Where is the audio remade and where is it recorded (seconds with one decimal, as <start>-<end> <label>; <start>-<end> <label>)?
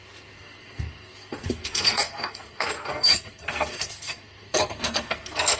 0.0-5.6 remade